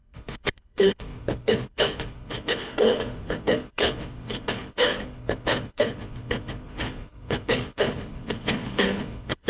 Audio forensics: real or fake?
fake